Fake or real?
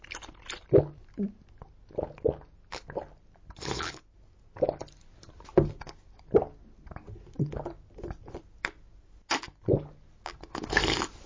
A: real